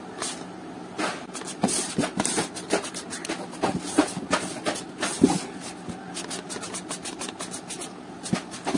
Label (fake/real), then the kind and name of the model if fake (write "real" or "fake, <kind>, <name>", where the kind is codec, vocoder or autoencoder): real